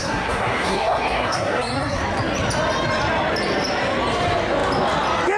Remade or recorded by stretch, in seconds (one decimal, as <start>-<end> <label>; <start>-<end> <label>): 0.0-2.0 remade; 2.0-5.4 recorded